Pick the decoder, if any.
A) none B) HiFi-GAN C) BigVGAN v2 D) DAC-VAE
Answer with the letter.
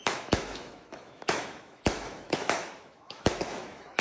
D